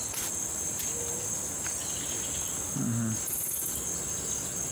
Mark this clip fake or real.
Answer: real